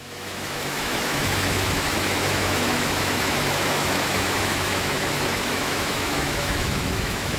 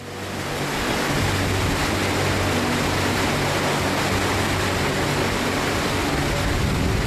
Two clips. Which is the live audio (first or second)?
second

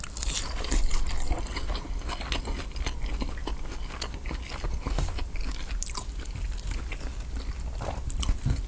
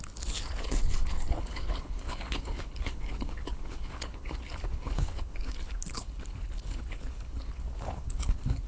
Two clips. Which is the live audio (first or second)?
first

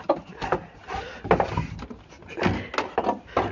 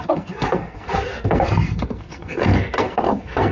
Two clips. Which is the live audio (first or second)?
first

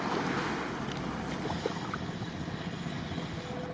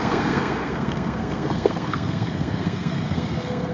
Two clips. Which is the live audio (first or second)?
first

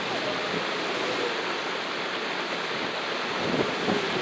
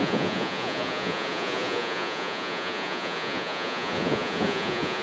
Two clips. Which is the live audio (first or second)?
first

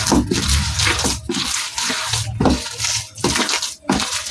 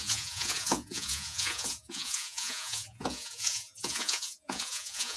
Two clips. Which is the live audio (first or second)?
first